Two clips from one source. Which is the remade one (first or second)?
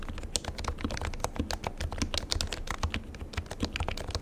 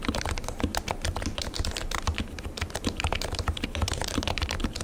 second